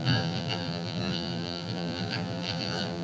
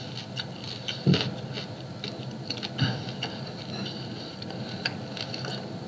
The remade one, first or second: first